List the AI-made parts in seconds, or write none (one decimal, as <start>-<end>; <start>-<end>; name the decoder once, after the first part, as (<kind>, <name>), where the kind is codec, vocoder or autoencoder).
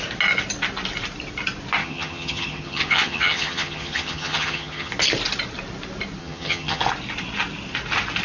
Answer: 1.8-4.9 (vocoder, HiFi-GAN); 6.2-6.8